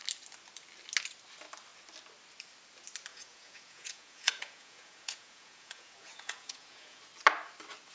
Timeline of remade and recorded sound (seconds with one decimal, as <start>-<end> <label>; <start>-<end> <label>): 0.0-3.1 recorded; 3.1-7.0 remade; 7.0-7.9 recorded